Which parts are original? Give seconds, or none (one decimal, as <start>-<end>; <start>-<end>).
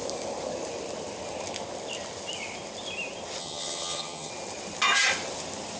0.0-3.4; 4.3-5.8